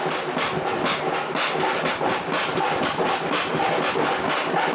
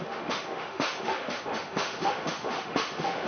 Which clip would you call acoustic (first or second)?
first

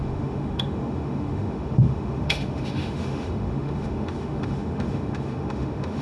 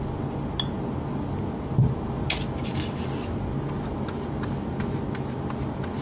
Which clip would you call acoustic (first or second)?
second